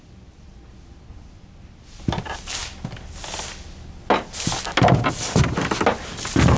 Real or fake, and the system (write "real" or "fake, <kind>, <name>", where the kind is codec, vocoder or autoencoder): real